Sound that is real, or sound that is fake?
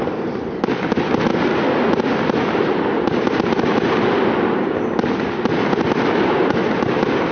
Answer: real